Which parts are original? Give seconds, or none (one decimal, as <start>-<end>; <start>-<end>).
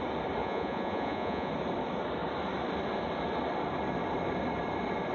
0.0-0.4; 1.5-5.1